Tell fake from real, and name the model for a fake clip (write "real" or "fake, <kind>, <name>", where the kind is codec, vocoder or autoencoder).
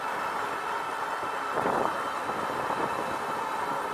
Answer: real